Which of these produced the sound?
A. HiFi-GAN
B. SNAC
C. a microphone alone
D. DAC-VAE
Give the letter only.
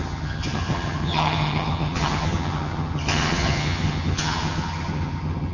A